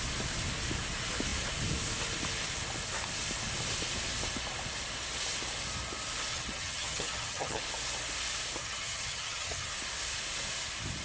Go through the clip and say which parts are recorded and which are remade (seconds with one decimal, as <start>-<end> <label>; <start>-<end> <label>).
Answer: 0.0-6.3 recorded; 6.3-7.6 remade; 7.6-8.6 recorded; 8.6-9.7 remade; 9.7-11.0 recorded